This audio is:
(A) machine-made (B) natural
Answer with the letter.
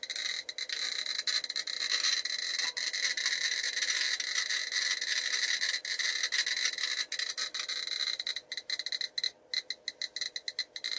B